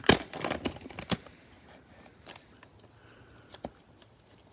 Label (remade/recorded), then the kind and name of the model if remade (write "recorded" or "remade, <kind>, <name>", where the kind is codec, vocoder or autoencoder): recorded